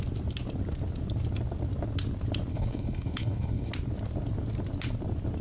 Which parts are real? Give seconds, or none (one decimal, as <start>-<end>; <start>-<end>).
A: 0.0-2.5; 3.7-5.4